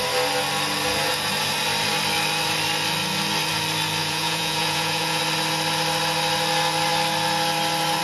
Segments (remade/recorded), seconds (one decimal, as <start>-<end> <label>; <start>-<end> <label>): 0.0-4.0 recorded; 4.0-5.2 remade; 5.2-8.0 recorded